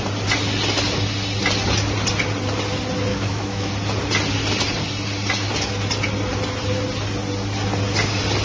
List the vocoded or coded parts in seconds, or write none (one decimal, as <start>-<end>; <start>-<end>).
3.1-3.7